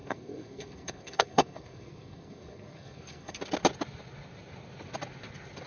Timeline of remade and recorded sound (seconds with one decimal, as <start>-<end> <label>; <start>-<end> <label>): 0.0-3.4 remade; 3.4-5.7 recorded